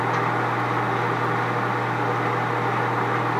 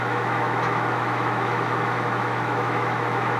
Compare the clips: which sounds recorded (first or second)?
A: first